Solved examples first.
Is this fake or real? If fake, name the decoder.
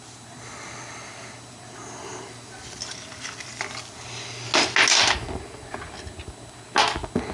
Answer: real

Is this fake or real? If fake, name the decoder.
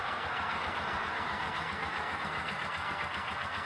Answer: fake, codec, SNAC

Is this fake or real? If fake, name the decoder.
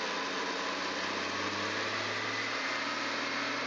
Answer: real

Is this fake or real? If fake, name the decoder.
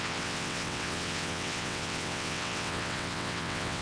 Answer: fake, vocoder, WaveNeXt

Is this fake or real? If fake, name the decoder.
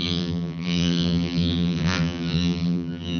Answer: fake, vocoder, BigVGAN v2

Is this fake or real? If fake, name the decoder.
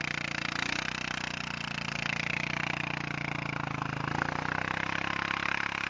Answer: real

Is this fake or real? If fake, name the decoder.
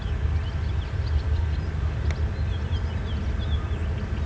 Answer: real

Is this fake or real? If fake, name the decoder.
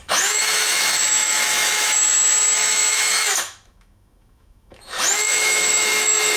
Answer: fake, autoencoder, DAC-VAE